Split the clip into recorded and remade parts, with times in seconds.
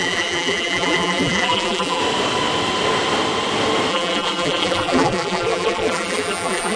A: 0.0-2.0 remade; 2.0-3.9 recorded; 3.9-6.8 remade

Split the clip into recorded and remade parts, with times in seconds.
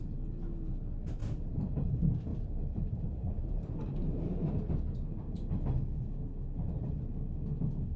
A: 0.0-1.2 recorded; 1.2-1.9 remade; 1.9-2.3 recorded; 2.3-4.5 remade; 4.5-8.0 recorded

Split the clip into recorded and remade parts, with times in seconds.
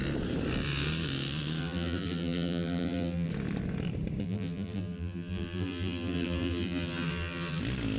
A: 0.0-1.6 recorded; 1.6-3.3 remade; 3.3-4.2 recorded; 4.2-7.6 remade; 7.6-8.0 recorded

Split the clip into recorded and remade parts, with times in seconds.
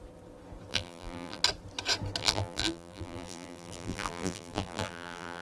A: 0.0-0.7 recorded; 0.7-1.4 remade; 1.4-2.2 recorded; 2.2-5.4 remade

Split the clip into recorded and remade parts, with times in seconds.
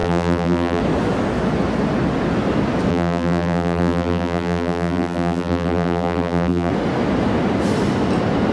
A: 0.0-0.8 remade; 0.8-2.9 recorded; 2.9-6.7 remade; 6.7-8.5 recorded